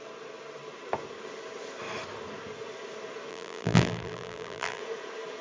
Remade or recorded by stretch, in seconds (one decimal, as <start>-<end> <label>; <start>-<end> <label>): 0.0-3.3 recorded; 3.3-4.8 remade; 4.8-5.4 recorded